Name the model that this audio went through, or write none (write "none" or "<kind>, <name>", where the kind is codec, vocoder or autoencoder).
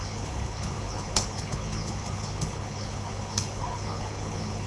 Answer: codec, HILCodec